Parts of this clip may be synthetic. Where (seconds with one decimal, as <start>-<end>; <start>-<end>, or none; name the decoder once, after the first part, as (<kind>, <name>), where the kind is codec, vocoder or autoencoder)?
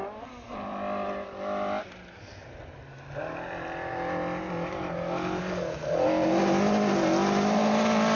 none